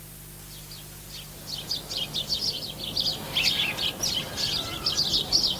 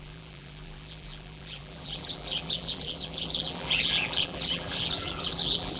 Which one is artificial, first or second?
second